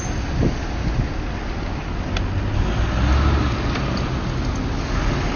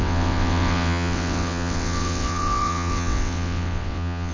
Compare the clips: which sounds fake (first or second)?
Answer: second